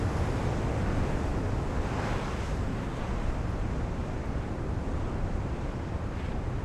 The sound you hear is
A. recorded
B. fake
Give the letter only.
A